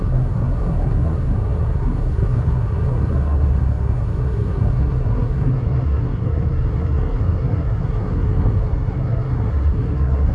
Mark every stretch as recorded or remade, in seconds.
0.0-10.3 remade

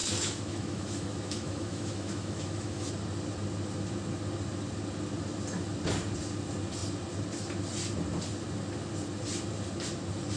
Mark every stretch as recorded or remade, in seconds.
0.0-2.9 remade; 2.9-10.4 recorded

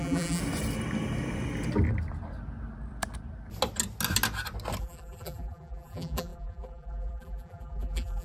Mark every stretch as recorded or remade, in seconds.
0.0-0.4 remade; 0.4-4.8 recorded; 4.8-8.2 remade